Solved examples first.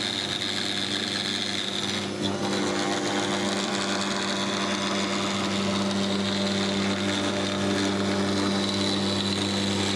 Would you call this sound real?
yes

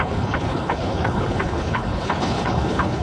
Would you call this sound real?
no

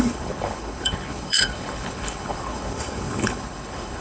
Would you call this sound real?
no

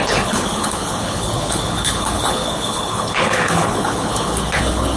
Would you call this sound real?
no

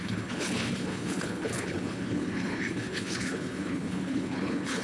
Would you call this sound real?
no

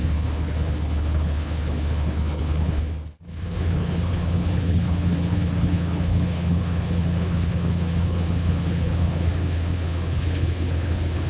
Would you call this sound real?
no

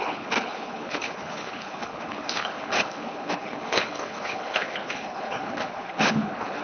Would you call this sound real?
no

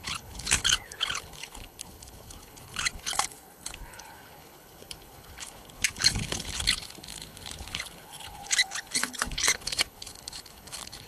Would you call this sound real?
no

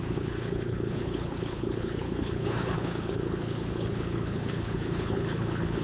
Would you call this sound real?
no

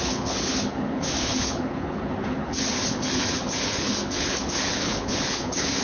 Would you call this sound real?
no